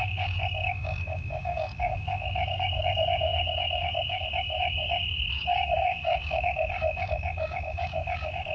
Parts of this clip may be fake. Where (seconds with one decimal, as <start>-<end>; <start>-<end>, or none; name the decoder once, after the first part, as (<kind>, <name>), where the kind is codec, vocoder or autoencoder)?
0.0-8.5 (codec, DAC)